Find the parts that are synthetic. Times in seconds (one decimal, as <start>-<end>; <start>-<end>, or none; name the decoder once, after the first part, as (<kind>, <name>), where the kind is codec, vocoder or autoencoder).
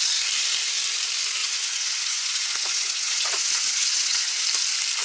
1.4-4.4 (vocoder, Vocos)